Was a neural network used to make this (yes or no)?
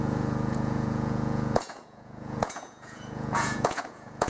yes